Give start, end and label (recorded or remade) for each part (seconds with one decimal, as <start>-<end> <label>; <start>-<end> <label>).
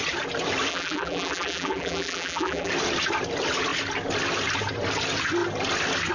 0.0-0.7 recorded; 0.7-2.7 remade; 2.7-6.1 recorded